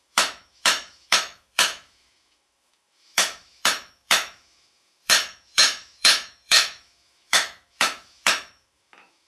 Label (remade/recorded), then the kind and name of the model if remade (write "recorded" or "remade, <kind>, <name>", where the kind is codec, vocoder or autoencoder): remade, autoencoder, DAC-VAE